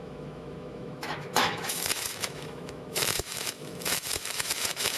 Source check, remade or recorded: remade